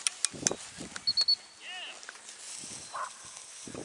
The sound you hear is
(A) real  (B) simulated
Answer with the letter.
A